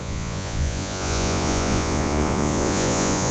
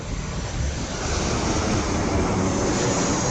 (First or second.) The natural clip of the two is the second